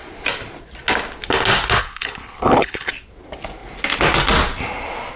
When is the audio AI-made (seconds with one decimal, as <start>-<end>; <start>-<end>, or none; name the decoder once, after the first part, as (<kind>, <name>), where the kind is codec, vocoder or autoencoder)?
1.8-2.9 (codec, HILCodec)

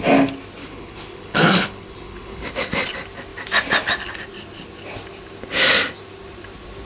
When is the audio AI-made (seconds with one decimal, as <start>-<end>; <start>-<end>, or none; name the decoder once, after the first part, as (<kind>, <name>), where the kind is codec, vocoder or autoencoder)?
0.6-2.5 (codec, HILCodec)

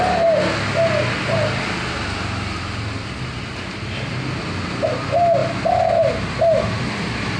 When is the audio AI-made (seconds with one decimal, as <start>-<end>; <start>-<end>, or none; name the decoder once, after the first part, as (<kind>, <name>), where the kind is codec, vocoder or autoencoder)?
none

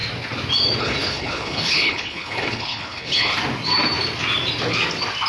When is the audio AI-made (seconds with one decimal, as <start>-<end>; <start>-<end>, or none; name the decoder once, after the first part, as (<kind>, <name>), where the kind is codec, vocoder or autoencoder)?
0.8-3.3 (codec, HILCodec)